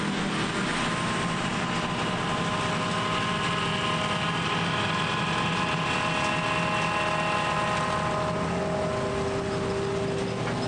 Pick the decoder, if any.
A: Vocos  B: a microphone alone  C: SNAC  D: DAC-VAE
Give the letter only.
B